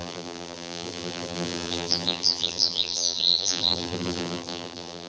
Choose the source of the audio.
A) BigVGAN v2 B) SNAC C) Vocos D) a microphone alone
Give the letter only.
A